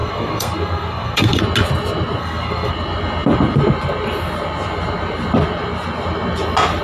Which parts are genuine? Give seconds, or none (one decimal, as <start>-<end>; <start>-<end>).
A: 1.4-2.2; 2.7-6.8